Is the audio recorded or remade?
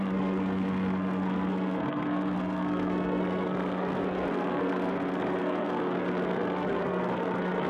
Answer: remade